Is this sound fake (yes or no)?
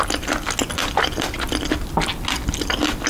no